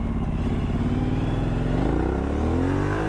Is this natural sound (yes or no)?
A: yes